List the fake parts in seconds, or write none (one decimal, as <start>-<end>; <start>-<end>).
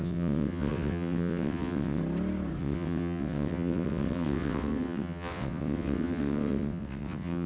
0.0-2.0; 2.6-7.5